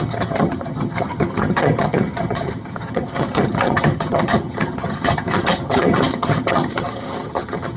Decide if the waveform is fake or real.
fake